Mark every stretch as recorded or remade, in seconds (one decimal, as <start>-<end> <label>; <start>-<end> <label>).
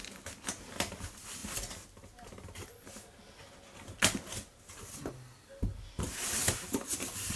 0.0-7.4 recorded